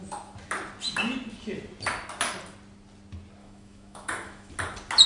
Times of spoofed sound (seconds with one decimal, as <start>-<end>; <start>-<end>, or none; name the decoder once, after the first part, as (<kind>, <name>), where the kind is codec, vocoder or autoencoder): 3.4-4.5 (autoencoder, DAC-VAE)